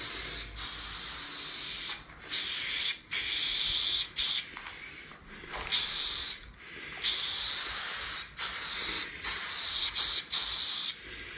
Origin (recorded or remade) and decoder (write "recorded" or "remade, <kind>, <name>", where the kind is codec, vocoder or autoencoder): recorded